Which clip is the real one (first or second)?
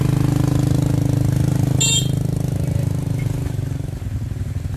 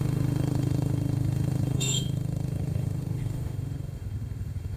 first